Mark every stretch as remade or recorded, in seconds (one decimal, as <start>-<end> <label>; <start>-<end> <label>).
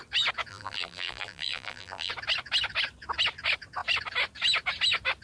0.0-0.5 recorded; 0.5-2.1 remade; 2.1-5.2 recorded